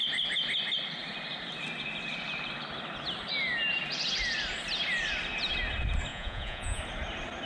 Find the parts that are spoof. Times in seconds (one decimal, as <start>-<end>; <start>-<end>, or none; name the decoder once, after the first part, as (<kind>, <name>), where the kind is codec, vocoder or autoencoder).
6.1-6.8 (vocoder, Vocos)